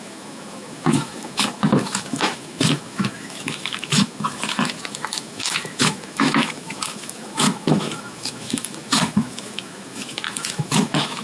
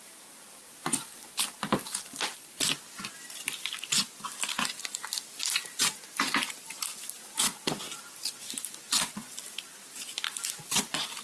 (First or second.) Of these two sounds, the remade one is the first